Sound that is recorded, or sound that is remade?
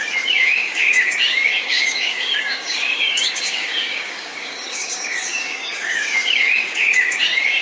remade